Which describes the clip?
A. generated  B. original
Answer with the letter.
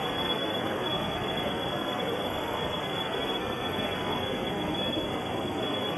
A